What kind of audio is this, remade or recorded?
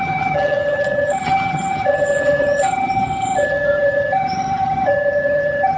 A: remade